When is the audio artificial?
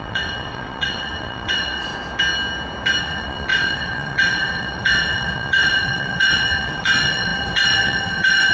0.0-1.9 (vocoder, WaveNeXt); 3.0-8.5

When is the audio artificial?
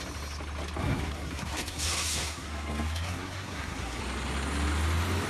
0.8-4.0 (codec, SNAC)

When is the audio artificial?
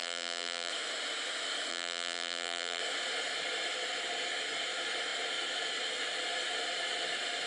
0.0-0.7 (vocoder, BigVGAN v2); 1.7-2.8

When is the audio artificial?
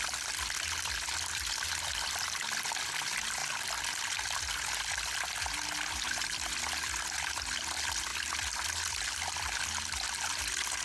none